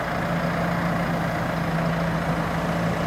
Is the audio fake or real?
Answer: real